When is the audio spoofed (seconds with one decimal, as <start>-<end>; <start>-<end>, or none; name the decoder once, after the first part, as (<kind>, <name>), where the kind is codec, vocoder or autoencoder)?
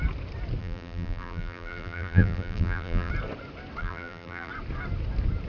0.6-3.1 (vocoder, BigVGAN v2); 3.8-4.5